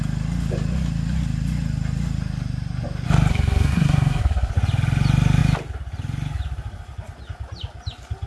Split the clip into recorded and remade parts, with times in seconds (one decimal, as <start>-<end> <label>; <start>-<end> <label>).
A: 0.0-3.3 recorded; 3.3-4.5 remade; 4.5-8.3 recorded